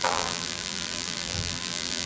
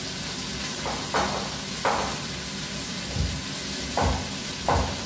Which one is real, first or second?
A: second